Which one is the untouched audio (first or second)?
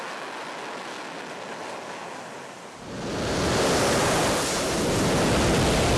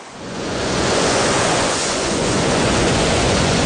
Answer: first